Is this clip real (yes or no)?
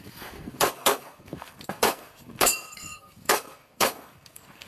no